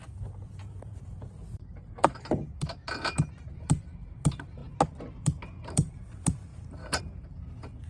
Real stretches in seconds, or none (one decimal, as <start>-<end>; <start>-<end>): 2.8-3.3; 4.6-5.2